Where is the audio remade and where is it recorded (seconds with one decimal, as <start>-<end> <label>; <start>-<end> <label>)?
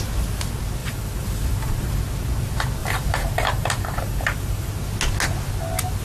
0.0-0.8 recorded; 0.8-2.0 remade; 2.0-2.8 recorded; 2.8-4.7 remade; 4.7-6.0 recorded